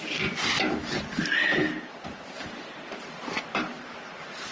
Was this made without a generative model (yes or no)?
yes